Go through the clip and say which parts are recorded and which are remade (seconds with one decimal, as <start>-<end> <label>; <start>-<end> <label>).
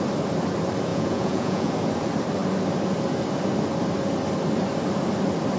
0.0-0.9 recorded; 0.9-1.7 remade; 1.7-5.6 recorded